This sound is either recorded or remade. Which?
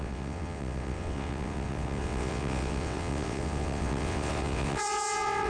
remade